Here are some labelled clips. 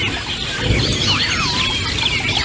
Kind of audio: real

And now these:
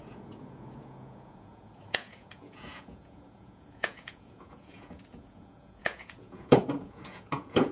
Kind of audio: fake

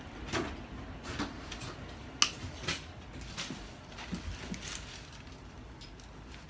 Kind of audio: real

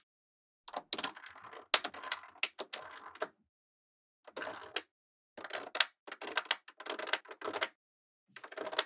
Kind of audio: real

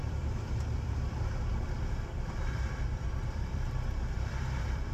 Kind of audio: fake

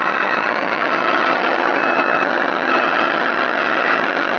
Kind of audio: fake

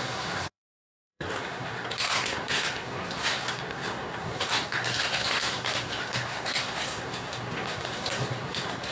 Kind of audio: fake